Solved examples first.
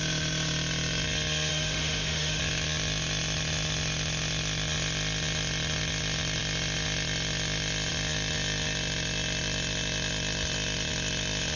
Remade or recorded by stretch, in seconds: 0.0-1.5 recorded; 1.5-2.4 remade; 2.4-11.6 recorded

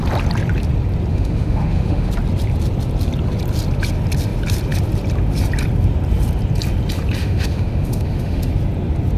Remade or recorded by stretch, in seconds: 0.0-1.1 recorded; 1.1-2.1 remade; 2.1-7.2 recorded; 7.2-8.5 remade; 8.5-9.2 recorded

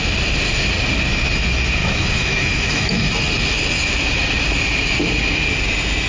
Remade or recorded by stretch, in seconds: 0.0-1.8 recorded; 1.8-3.1 remade; 3.1-6.1 recorded

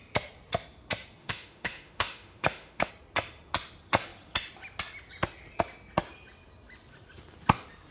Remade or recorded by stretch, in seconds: 0.0-1.2 recorded; 1.2-2.9 remade; 2.9-7.9 recorded

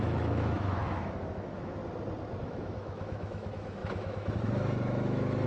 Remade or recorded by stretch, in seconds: 0.0-1.8 remade; 1.8-2.4 recorded; 2.4-5.5 remade

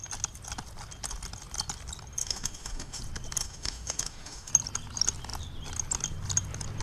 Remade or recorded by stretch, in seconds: 0.0-2.2 recorded; 2.2-3.0 remade; 3.0-3.4 recorded; 3.4-4.5 remade; 4.5-6.8 recorded